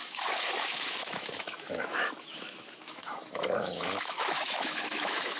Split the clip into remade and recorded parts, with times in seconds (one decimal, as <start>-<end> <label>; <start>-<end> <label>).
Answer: 0.0-5.4 remade